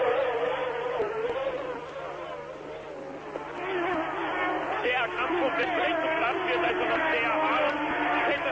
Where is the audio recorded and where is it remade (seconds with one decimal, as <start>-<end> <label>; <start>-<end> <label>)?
0.0-8.5 recorded

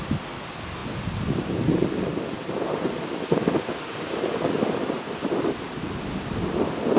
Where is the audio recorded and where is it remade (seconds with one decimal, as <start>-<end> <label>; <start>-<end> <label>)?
0.0-7.0 recorded

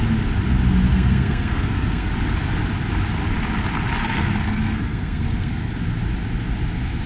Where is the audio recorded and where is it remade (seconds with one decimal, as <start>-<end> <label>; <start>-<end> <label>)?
0.0-0.9 recorded; 0.9-2.1 remade; 2.1-4.0 recorded; 4.0-5.7 remade; 5.7-7.1 recorded

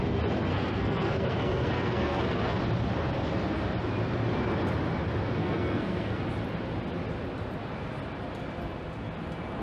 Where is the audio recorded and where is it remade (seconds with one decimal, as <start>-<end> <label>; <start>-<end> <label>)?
0.0-0.5 recorded; 0.5-2.6 remade; 2.6-5.4 recorded; 5.4-6.2 remade; 6.2-9.6 recorded

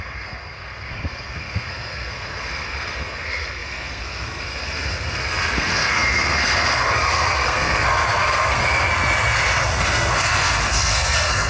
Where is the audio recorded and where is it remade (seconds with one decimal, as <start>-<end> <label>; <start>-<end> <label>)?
0.0-8.9 remade; 8.9-9.8 recorded; 9.8-11.5 remade

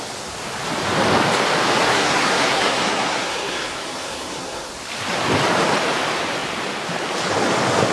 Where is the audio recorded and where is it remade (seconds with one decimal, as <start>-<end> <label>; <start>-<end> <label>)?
0.0-1.9 recorded; 1.9-4.7 remade; 4.7-7.9 recorded